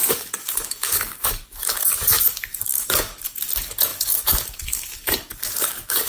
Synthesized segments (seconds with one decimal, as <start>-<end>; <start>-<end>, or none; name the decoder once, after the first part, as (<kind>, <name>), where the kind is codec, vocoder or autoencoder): 0.0-6.1 (codec, DAC)